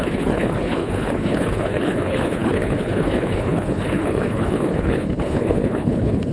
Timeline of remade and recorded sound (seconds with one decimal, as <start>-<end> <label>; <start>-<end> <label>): 0.0-6.3 remade